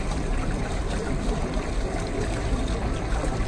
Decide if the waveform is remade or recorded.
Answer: recorded